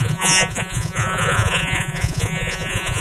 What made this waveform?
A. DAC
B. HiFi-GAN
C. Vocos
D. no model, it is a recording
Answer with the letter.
C